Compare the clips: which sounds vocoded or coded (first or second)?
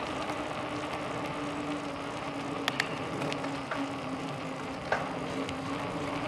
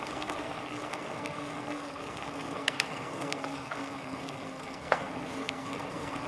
second